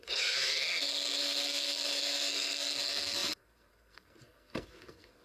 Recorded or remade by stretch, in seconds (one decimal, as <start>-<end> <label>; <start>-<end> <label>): 0.0-5.2 remade